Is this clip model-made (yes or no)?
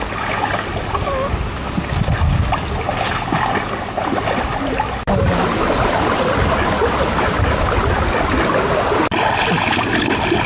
no